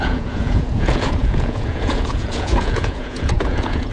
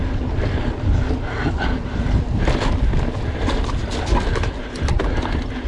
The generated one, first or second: first